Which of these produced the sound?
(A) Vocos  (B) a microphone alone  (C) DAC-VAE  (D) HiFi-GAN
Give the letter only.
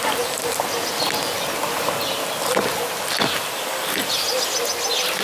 B